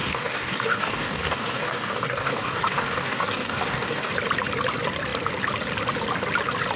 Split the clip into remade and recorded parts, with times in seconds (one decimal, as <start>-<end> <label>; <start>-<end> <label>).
0.0-4.1 remade; 4.1-6.8 recorded